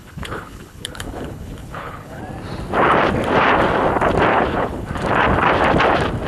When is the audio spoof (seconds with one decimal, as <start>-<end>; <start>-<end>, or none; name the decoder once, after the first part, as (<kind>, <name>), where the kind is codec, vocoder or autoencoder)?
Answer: 0.0-2.2 (codec, HILCodec); 4.3-4.9